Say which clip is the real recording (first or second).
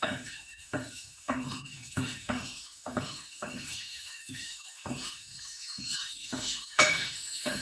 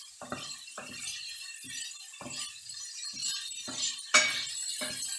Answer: second